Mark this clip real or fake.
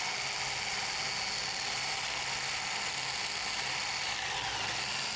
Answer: real